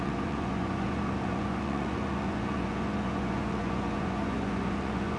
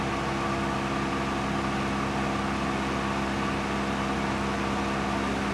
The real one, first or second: second